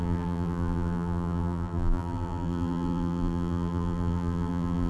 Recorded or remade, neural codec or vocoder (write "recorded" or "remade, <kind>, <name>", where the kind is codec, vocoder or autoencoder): remade, vocoder, BigVGAN v2